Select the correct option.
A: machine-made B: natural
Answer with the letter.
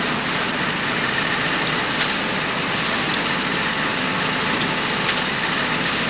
B